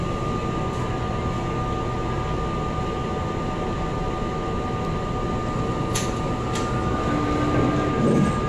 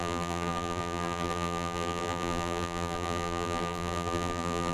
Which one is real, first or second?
first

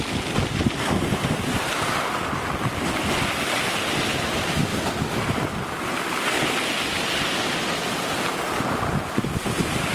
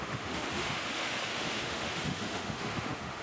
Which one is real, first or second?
first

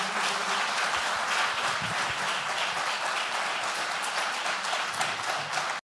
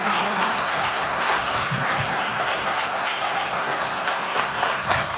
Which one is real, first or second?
first